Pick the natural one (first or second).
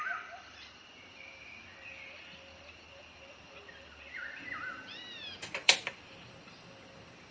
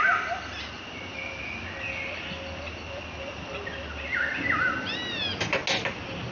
second